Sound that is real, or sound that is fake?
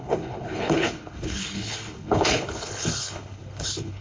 fake